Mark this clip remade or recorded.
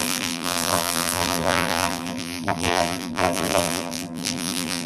remade